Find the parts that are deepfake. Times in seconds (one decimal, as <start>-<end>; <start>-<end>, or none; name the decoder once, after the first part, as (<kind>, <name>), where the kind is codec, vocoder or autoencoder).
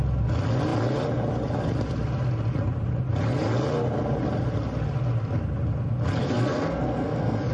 6.2-7.5 (codec, SNAC)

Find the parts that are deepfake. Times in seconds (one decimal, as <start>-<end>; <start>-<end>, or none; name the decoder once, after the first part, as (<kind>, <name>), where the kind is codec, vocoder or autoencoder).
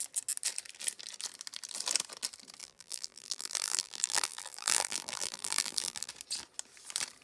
2.6-6.1 (vocoder, BigVGAN v2)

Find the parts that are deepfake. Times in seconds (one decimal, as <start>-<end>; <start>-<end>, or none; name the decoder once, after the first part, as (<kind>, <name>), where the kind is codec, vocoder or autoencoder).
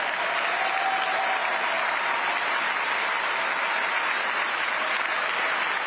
none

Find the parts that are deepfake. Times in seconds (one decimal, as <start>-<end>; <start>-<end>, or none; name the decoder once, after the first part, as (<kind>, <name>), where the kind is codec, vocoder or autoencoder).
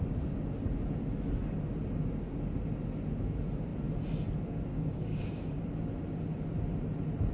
4.7-5.6 (codec, DAC)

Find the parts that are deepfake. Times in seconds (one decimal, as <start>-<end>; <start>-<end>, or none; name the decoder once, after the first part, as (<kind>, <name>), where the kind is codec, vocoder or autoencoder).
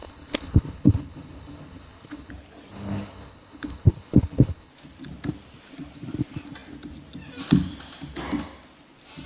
0.0-2.3 (codec, HILCodec); 2.7-4.7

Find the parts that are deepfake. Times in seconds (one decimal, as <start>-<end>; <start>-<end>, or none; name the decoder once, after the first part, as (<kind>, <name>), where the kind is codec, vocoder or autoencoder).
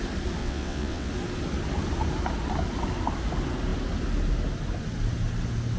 0.4-1.1 (vocoder, WaveNeXt)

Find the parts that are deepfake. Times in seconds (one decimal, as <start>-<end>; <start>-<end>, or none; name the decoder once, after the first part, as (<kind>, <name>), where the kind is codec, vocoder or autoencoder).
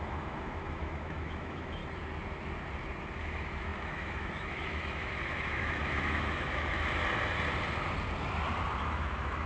0.0-1.8 (autoencoder, DAC-VAE); 3.2-7.0; 8.8-9.5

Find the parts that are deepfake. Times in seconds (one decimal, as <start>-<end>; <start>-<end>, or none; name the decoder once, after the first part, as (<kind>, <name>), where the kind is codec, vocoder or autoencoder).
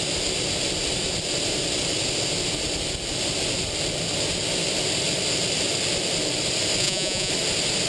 6.8-7.3 (vocoder, Vocos)